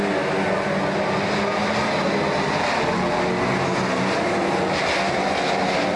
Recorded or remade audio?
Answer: recorded